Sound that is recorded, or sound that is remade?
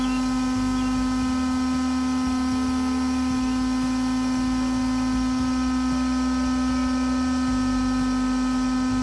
recorded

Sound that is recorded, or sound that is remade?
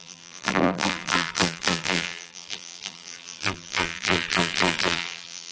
remade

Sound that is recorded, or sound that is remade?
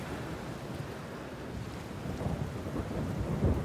remade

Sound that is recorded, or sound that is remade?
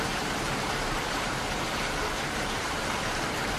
remade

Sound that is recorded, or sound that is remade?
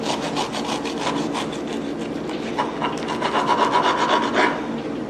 recorded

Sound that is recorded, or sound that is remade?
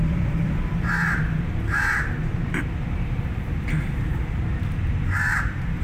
remade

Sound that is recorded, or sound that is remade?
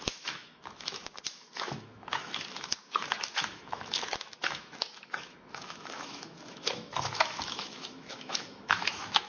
remade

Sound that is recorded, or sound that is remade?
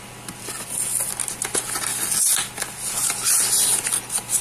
recorded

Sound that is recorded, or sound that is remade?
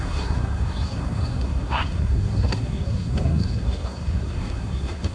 remade